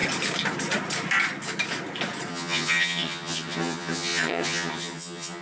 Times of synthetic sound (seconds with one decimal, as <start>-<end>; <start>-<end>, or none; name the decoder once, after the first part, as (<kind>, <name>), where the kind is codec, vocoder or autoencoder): 2.3-5.4 (vocoder, HiFi-GAN)